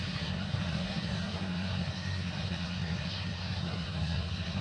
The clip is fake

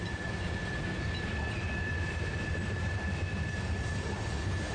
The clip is fake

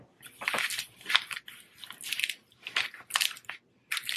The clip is fake